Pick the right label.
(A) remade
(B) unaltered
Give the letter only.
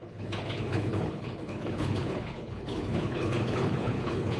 A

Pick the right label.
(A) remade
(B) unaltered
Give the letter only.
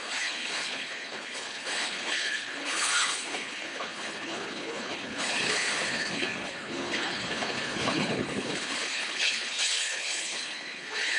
A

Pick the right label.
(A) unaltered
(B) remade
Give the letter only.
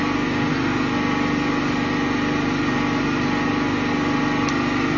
A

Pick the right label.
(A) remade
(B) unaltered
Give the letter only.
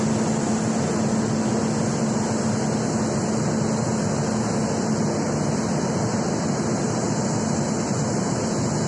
B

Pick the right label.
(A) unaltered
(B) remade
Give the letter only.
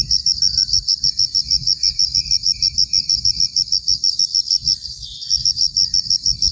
A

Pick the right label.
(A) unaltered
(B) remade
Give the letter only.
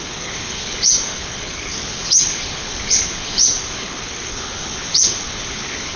B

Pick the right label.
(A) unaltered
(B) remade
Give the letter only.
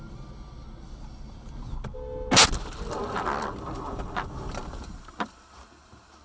A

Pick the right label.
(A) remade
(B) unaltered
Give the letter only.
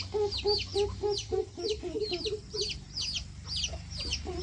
B